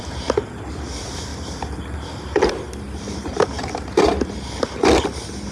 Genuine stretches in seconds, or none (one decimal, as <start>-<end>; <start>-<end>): 0.0-1.3; 4.6-5.5